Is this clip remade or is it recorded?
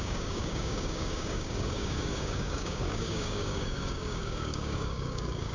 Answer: remade